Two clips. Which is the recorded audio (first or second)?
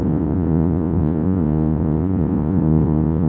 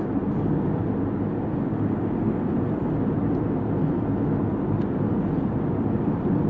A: second